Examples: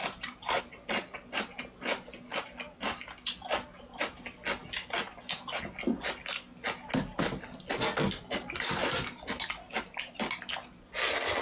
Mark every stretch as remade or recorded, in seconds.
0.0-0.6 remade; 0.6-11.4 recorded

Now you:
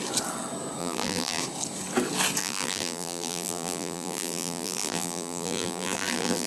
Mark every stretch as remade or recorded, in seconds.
0.0-0.8 recorded; 0.8-1.4 remade; 1.4-2.4 recorded; 2.4-6.5 remade